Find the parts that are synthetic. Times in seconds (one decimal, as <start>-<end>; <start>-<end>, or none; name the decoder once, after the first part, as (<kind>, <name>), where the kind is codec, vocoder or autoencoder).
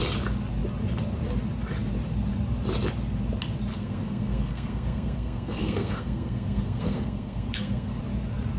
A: 3.7-8.0 (codec, SNAC)